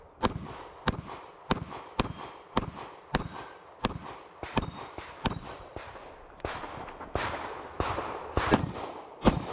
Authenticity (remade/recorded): recorded